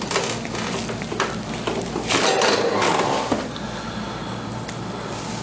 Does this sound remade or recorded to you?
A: recorded